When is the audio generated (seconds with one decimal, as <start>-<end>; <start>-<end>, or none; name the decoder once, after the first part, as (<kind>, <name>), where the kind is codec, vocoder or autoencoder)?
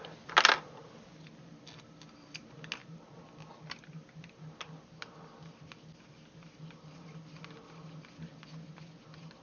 none